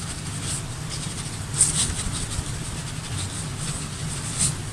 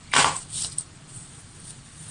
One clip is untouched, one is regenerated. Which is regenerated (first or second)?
second